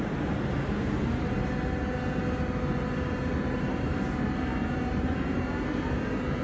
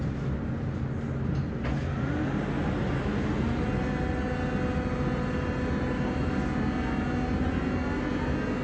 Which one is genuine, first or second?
second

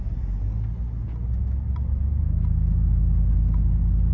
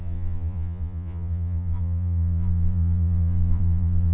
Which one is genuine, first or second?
first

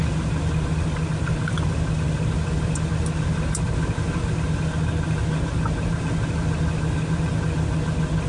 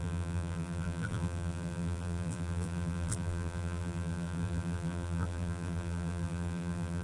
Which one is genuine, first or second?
first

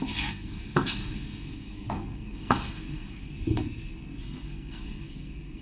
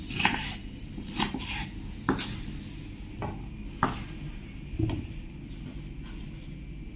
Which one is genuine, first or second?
second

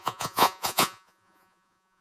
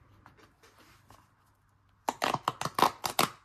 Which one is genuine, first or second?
second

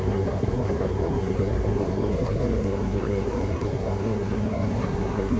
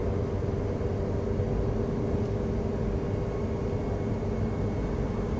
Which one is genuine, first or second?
second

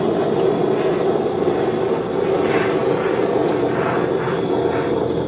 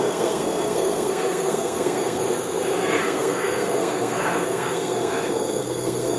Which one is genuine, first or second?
first